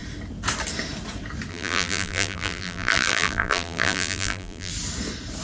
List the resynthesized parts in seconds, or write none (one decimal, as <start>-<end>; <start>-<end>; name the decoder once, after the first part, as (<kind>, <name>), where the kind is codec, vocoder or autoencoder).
1.5-4.7 (vocoder, BigVGAN v2)